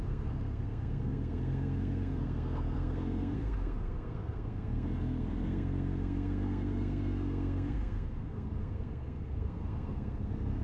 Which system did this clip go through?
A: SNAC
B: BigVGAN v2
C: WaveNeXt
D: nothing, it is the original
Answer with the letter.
A